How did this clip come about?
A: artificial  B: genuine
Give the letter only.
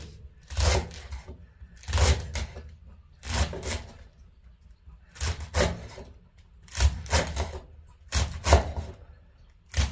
B